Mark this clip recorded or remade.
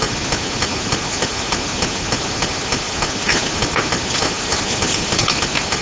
recorded